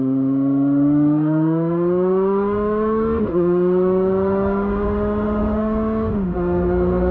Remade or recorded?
remade